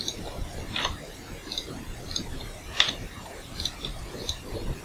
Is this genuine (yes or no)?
yes